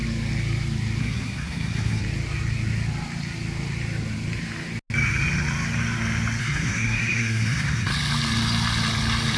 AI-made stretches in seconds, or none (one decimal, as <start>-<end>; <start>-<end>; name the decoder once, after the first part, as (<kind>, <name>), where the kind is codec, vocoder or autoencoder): 1.0-2.0 (codec, SNAC); 6.4-7.9